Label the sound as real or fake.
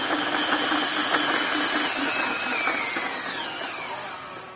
real